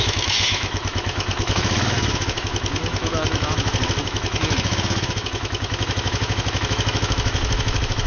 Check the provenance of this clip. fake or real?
fake